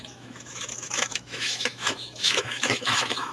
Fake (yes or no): yes